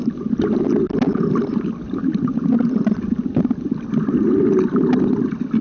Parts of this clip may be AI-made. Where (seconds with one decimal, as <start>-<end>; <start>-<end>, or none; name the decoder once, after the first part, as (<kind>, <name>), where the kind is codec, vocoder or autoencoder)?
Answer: none